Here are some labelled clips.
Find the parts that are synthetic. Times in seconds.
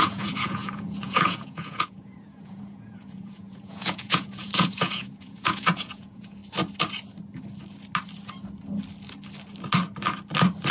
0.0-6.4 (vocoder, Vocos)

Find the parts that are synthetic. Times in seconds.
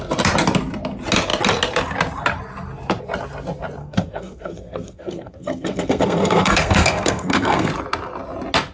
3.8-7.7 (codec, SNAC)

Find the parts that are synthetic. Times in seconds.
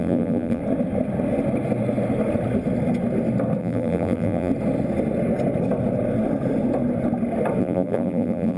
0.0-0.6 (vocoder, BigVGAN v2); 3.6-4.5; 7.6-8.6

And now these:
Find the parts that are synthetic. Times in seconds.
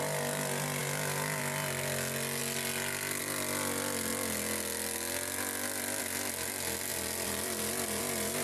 6.9-8.0 (vocoder, BigVGAN v2)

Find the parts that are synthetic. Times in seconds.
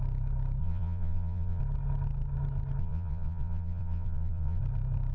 0.6-1.6 (vocoder, Vocos); 2.8-4.6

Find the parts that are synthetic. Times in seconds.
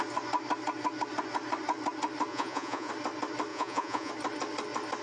2.3-2.9 (vocoder, Vocos); 3.5-4.1